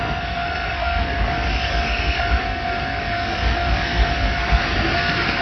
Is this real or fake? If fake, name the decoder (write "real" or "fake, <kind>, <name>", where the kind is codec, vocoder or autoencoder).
fake, codec, SNAC